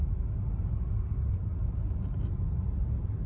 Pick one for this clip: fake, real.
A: real